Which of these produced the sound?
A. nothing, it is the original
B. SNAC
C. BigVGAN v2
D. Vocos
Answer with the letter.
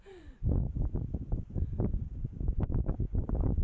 D